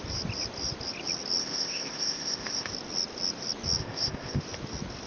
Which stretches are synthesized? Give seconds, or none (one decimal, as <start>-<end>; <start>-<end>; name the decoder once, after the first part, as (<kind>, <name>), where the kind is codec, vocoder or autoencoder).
1.4-2.7 (codec, ZipCodec); 3.8-4.4